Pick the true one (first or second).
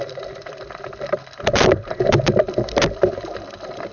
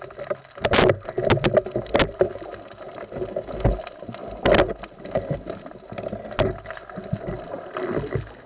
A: second